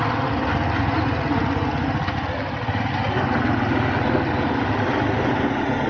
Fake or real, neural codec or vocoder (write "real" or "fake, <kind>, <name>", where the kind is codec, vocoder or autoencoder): real